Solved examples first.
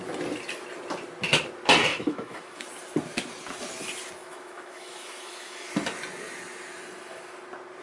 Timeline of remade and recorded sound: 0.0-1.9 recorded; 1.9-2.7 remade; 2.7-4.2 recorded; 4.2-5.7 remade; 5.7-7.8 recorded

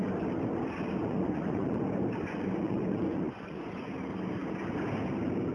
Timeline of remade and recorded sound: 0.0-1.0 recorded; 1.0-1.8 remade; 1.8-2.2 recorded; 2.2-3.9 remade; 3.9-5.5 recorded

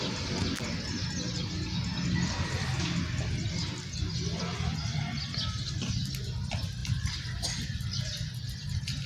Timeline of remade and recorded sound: 0.0-9.1 recorded